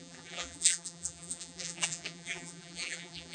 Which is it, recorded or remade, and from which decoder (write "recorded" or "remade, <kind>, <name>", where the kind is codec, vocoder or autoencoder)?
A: remade, vocoder, BigVGAN v2